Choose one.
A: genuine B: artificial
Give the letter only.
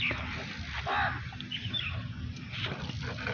A